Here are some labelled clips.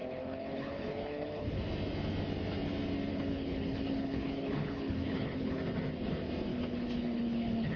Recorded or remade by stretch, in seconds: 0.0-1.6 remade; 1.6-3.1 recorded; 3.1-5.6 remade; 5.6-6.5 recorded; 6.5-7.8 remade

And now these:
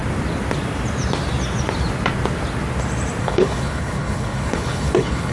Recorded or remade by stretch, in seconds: 0.0-3.2 recorded; 3.2-5.3 remade

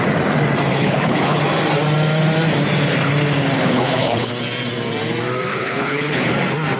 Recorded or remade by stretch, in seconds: 0.0-0.7 recorded; 0.7-1.4 remade; 1.4-3.6 recorded; 3.6-4.3 remade; 4.3-5.5 recorded; 5.5-6.3 remade; 6.3-6.8 recorded